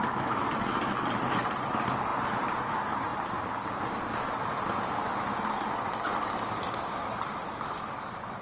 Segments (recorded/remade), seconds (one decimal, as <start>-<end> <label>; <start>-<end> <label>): 0.0-2.1 remade; 2.1-2.7 recorded; 2.7-3.1 remade; 3.1-6.7 recorded; 6.7-8.4 remade